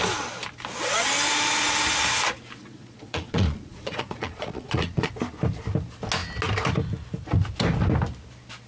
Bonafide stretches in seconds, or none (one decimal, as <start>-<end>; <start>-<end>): 0.0-2.6; 5.1-8.7

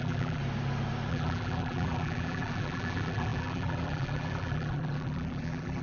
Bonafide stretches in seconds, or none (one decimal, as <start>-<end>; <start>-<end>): 0.4-1.1

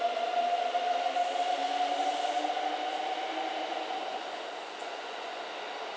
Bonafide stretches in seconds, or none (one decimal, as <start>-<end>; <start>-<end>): 0.0-4.1; 5.4-6.0

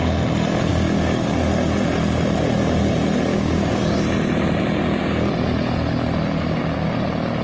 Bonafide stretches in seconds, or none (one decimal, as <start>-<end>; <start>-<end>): 0.0-0.7; 1.3-3.3; 4.0-4.8; 5.3-7.4

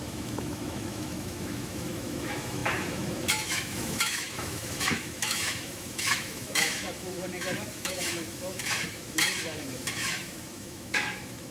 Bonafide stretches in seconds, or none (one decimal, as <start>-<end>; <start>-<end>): none

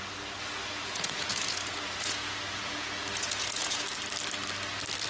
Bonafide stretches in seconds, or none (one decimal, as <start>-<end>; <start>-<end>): 0.0-0.7; 3.8-5.1